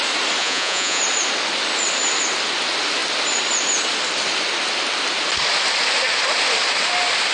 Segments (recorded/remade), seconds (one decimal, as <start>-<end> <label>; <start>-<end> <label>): 0.0-0.4 recorded; 0.4-1.0 remade; 1.0-7.3 recorded